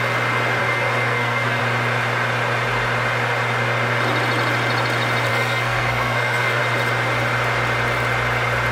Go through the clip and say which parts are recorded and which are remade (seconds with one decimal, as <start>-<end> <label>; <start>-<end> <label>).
0.0-0.6 recorded; 0.6-1.6 remade; 1.6-5.3 recorded; 5.3-6.6 remade; 6.6-8.7 recorded